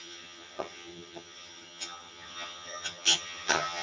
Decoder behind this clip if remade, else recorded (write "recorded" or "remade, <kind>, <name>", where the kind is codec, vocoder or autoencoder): remade, vocoder, HiFi-GAN